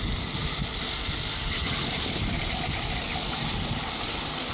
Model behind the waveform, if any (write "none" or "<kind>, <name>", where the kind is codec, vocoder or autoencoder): none